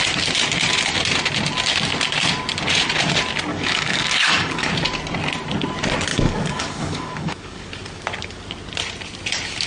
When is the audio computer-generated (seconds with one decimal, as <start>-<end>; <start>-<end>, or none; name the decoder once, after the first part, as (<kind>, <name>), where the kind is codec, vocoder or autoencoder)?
3.5-4.7 (codec, DAC); 6.1-7.7